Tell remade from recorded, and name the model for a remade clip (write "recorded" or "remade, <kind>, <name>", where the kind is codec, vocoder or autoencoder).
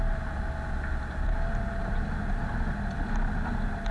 recorded